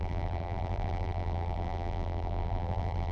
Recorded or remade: remade